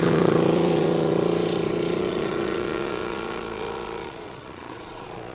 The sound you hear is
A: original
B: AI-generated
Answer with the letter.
B